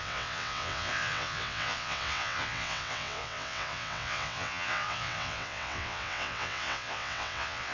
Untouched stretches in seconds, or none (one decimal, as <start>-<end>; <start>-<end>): none